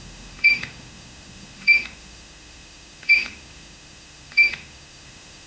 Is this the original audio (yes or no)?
no